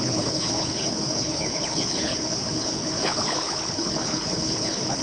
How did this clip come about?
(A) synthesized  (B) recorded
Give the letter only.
A